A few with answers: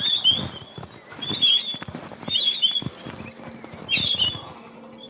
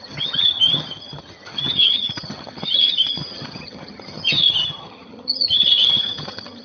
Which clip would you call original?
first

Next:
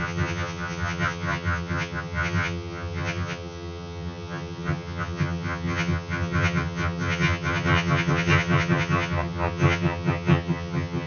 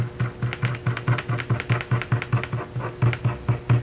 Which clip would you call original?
second